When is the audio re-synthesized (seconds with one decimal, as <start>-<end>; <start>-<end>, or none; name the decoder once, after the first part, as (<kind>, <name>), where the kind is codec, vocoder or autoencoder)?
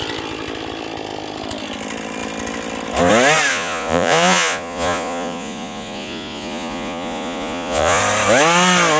3.5-8.0 (vocoder, Vocos)